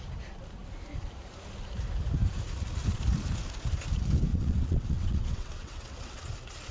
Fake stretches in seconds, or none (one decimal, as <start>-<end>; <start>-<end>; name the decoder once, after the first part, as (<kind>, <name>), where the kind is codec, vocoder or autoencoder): 4.3-6.2 (vocoder, WaveNeXt)